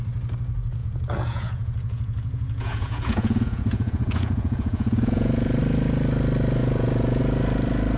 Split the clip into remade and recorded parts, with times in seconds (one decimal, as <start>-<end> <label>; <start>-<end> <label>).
0.0-0.8 recorded; 0.8-5.6 remade; 5.6-6.6 recorded; 6.6-7.2 remade; 7.2-8.0 recorded